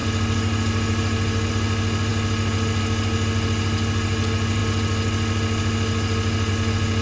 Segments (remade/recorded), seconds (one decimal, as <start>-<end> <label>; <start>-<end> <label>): 0.0-7.0 recorded